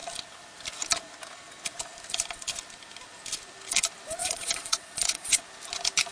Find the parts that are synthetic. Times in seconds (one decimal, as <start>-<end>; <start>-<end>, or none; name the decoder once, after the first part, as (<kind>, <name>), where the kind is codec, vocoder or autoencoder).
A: 4.2-5.4 (vocoder, Vocos)